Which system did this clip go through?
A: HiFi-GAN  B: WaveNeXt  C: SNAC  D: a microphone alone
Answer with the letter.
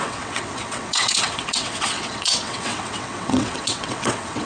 B